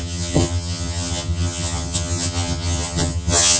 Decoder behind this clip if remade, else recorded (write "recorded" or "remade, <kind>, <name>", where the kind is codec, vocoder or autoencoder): remade, vocoder, HiFi-GAN